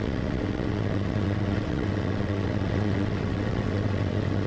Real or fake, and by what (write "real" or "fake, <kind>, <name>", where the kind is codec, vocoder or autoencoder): fake, vocoder, WaveNeXt